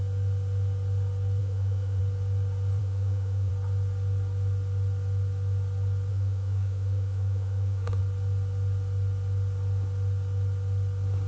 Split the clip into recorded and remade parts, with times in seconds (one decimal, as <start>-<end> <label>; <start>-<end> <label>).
0.0-1.4 recorded; 1.4-2.0 remade; 2.0-2.8 recorded; 2.8-3.5 remade; 3.5-6.1 recorded; 6.1-8.0 remade; 8.0-11.3 recorded